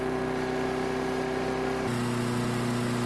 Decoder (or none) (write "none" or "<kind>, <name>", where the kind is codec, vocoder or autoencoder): none